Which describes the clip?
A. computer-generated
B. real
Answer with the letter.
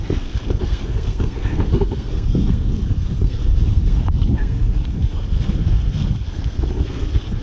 A